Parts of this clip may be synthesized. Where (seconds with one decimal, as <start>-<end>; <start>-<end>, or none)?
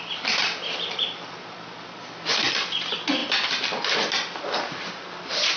none